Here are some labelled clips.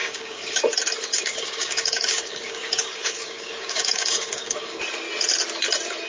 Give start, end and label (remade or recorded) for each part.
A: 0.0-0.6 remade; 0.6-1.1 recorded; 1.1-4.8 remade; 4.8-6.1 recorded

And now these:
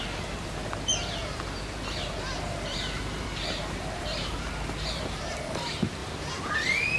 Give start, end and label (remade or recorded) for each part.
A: 0.0-1.2 recorded; 1.2-5.4 remade; 5.4-7.0 recorded

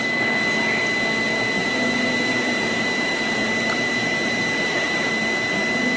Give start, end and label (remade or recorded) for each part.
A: 0.0-1.6 recorded; 1.6-5.1 remade; 5.1-6.0 recorded

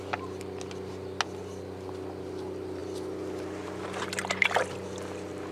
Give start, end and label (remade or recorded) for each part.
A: 0.0-5.5 recorded

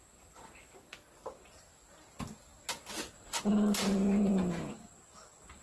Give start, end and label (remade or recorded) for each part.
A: 0.0-5.6 recorded

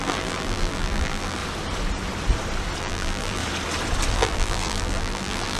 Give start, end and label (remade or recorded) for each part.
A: 0.0-1.4 remade; 1.4-2.8 recorded; 2.8-3.4 remade; 3.4-4.1 recorded; 4.1-5.6 remade